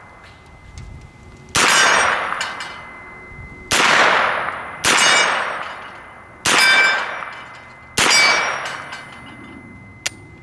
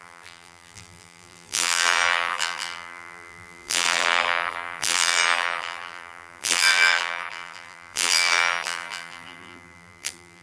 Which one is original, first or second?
first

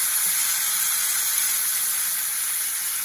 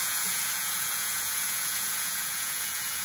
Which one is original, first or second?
first